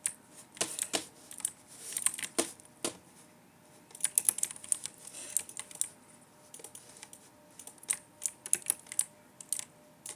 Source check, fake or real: real